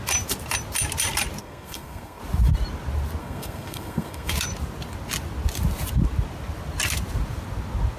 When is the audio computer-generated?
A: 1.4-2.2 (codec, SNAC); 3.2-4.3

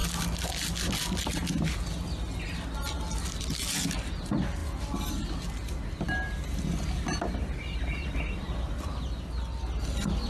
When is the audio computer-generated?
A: none

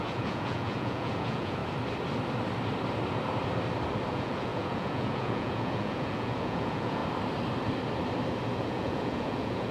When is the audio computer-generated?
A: 0.0-1.6 (vocoder, Vocos); 4.1-7.0; 8.6-9.7

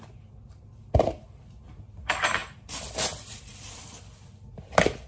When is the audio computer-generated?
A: 2.4-4.0 (vocoder, BigVGAN v2)

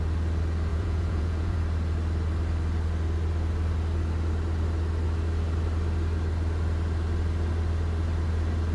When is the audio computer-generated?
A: 0.7-1.6 (vocoder, Vocos)

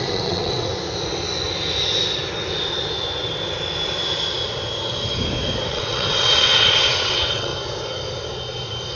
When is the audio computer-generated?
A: 0.0-0.7 (vocoder, WaveNeXt); 5.7-7.5

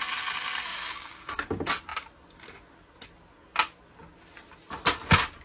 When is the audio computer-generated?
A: 0.7-1.5 (codec, DAC)

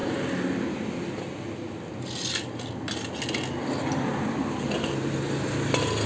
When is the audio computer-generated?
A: none